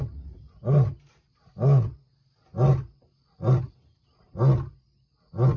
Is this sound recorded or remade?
recorded